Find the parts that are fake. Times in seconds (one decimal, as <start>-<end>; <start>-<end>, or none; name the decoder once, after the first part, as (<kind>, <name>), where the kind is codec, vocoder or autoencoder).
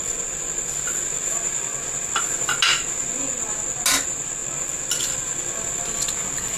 none